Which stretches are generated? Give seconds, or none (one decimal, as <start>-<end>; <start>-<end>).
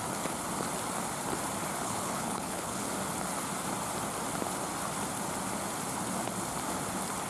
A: 1.8-2.9